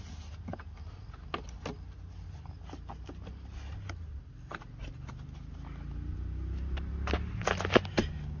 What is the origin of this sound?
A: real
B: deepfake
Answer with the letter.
A